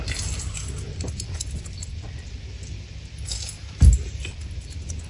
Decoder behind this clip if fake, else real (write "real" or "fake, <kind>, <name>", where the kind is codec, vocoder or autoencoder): real